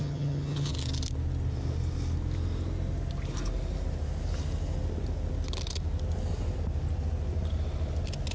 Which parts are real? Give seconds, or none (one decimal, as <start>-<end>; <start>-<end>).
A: 0.7-8.3